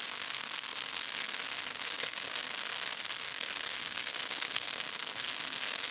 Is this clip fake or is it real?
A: fake